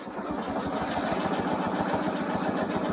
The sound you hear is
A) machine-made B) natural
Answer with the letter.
B